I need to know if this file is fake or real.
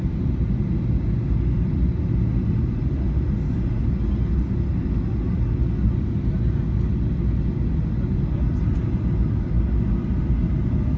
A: real